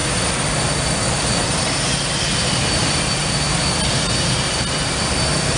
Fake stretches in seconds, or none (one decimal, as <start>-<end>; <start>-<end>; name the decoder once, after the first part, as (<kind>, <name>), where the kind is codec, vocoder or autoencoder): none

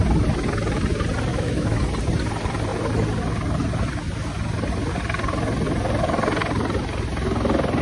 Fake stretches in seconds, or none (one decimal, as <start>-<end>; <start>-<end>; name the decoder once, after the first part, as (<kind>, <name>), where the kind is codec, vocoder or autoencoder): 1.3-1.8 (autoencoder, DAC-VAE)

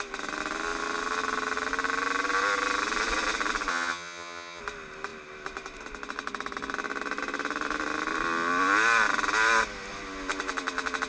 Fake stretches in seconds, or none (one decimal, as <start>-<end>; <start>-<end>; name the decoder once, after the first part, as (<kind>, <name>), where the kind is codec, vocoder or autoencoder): 3.7-4.6 (vocoder, HiFi-GAN)

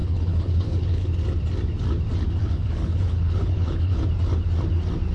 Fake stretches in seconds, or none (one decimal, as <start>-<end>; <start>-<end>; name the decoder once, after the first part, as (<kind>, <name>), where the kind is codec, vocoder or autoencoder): 0.0-1.1 (codec, HILCodec); 2.4-4.0

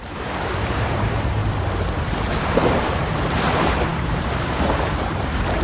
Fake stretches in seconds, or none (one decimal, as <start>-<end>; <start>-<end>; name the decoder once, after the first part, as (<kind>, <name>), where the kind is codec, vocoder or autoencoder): 0.0-1.4 (vocoder, BigVGAN v2); 2.4-5.6

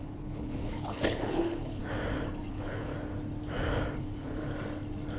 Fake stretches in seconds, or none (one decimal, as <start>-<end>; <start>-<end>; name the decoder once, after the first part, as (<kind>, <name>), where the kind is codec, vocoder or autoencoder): 0.0-1.8 (codec, HILCodec); 2.5-2.9; 4.0-4.4

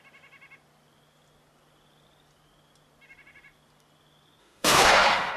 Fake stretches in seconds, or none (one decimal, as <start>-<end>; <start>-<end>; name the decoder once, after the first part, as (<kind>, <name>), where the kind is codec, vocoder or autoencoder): 4.4-5.4 (autoencoder, DAC-VAE)